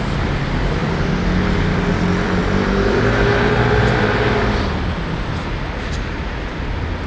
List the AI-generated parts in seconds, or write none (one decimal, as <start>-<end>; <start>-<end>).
none